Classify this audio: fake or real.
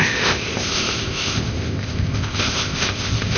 fake